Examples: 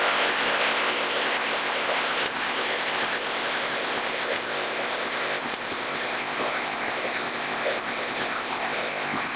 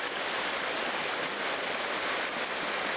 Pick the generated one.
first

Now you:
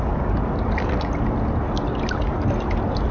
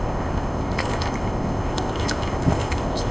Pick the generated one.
second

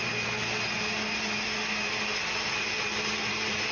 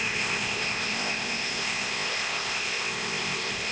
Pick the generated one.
second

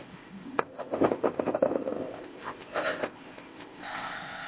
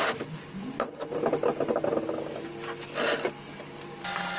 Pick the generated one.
first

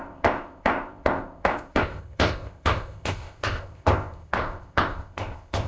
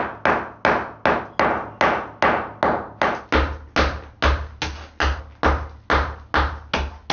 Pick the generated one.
first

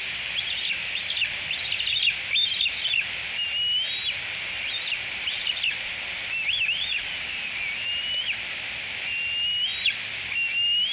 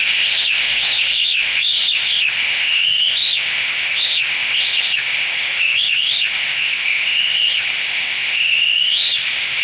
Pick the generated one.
second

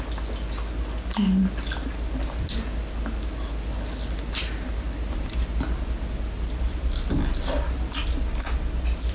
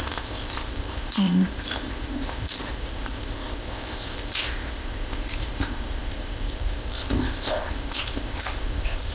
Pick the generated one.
second